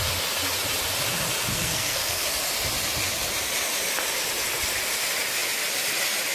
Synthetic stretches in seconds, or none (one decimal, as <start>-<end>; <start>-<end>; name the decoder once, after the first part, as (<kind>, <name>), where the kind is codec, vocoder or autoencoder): 1.5-2.3 (codec, SNAC)